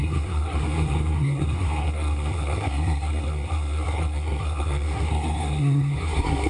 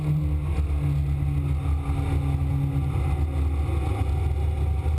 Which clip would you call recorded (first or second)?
second